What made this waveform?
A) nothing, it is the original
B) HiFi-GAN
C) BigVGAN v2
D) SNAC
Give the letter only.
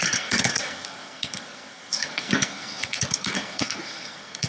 D